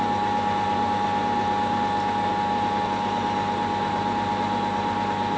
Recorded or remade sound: recorded